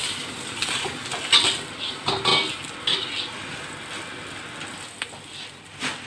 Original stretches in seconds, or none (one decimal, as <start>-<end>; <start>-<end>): 0.0-6.1